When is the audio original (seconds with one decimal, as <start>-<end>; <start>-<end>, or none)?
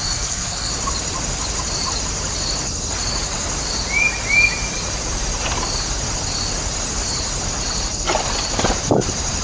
0.7-9.4